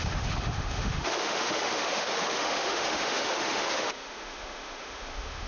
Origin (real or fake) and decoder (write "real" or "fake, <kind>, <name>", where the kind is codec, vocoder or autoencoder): fake, autoencoder, DAC-VAE